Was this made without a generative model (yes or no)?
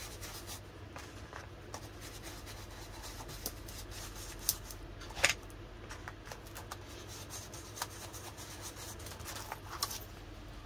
yes